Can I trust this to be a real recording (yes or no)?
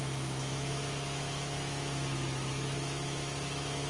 no